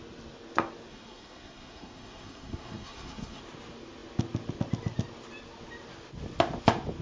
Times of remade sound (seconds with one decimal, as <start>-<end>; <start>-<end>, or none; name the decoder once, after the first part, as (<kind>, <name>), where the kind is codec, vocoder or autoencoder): 0.9-3.4 (codec, SNAC)